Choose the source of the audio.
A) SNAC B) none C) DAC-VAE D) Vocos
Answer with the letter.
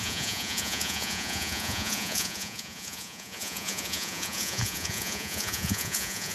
D